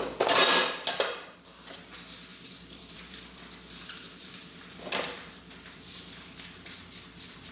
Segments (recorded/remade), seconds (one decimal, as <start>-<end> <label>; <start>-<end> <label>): 0.0-2.3 recorded; 2.3-6.8 remade; 6.8-7.5 recorded